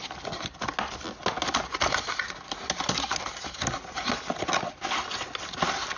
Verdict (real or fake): real